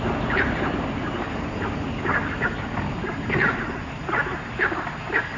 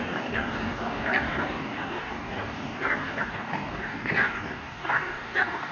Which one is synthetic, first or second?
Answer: second